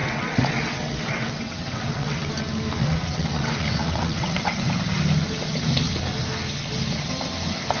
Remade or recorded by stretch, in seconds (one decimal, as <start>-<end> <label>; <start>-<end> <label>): 0.0-2.3 remade; 2.3-2.8 recorded; 2.8-4.7 remade; 4.7-7.8 recorded

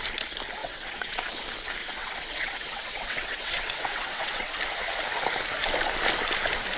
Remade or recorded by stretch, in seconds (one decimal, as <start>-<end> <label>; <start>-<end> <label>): 0.0-0.6 recorded; 0.6-1.4 remade; 1.4-1.8 recorded; 1.8-4.6 remade; 4.6-6.8 recorded

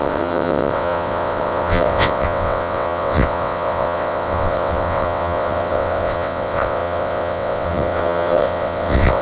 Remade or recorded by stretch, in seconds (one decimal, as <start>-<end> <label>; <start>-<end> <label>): 0.0-9.2 remade